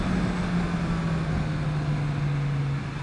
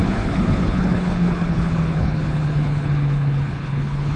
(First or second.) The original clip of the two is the first